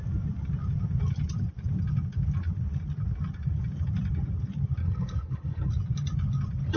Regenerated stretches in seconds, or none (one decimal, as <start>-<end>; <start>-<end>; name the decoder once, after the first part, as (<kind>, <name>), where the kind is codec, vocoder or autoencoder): 4.8-5.7 (codec, HILCodec)